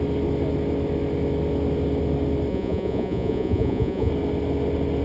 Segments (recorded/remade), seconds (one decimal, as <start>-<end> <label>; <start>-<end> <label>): 0.0-2.5 recorded; 2.5-4.1 remade; 4.1-5.0 recorded